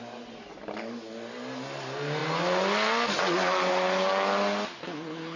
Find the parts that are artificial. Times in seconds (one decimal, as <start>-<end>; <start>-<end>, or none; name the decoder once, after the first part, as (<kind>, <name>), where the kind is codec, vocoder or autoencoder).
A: 4.8-5.4 (codec, HILCodec)